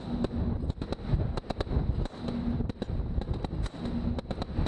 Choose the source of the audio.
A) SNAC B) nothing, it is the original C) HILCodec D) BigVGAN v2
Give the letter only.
B